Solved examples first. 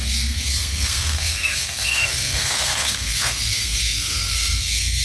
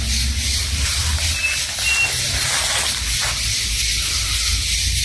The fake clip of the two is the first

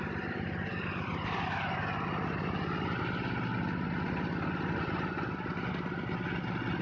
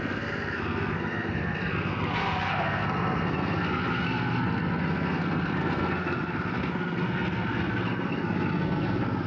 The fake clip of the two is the second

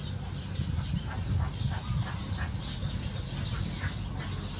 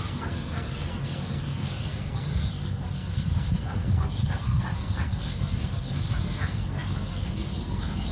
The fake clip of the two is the second